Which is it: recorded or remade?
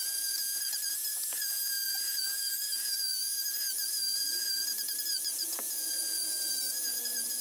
remade